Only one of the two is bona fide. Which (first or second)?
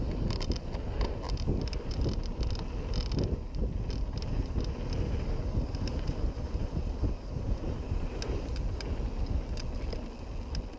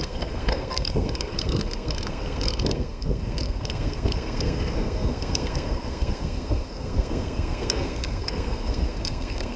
first